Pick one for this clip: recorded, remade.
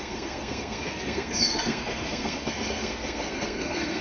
remade